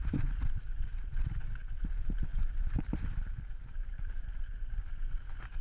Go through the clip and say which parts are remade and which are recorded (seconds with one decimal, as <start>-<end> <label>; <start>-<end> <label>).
0.0-2.3 recorded; 2.3-4.7 remade; 4.7-5.6 recorded